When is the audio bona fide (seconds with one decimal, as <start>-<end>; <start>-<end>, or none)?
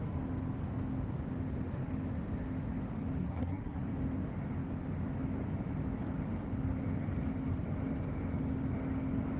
0.0-3.2; 3.8-9.4